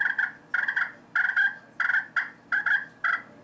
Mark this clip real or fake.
real